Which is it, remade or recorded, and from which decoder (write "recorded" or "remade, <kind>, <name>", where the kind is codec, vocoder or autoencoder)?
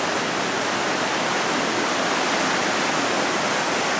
recorded